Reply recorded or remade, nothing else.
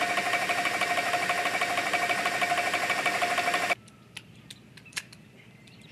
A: recorded